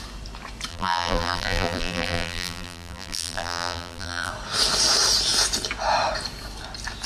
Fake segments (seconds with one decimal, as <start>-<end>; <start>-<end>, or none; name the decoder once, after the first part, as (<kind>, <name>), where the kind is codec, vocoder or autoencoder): 0.7-4.3 (vocoder, BigVGAN v2)